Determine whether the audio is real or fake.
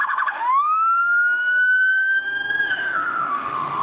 fake